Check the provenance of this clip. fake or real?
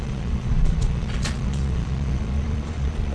fake